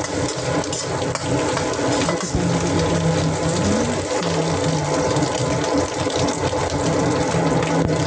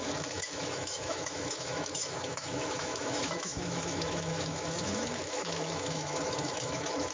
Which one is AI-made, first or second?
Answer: second